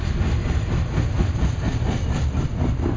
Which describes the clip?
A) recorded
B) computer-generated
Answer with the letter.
A